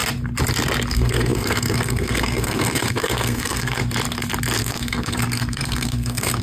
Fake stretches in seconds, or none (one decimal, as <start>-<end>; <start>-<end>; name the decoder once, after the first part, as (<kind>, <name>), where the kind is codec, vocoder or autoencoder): 0.9-3.8 (codec, SNAC); 4.6-6.4